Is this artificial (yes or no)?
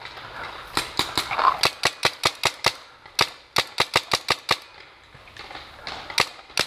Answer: no